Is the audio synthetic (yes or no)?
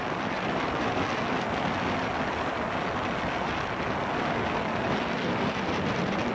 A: no